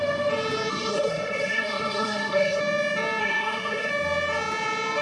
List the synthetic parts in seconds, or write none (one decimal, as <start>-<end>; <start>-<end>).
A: 0.7-2.6; 3.2-3.9